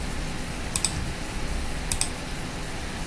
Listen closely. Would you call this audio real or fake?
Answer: real